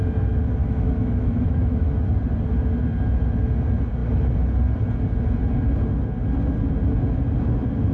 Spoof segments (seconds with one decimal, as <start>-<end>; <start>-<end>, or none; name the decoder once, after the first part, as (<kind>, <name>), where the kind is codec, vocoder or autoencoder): 0.6-2.0 (autoencoder, DAC-VAE)